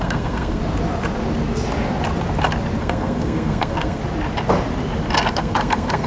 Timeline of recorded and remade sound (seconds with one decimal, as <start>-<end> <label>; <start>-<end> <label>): 0.0-0.6 remade; 0.6-2.8 recorded; 2.8-4.0 remade; 4.0-5.3 recorded; 5.3-6.1 remade